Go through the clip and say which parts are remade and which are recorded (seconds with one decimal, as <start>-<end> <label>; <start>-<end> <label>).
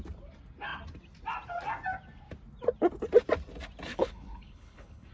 0.0-3.9 recorded; 3.9-5.1 remade